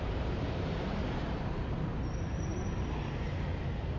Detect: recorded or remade remade